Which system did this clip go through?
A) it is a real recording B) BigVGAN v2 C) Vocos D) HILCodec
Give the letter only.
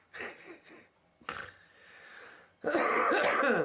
A